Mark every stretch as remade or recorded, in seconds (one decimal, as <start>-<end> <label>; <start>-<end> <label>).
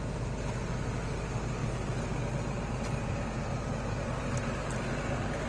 0.0-5.5 recorded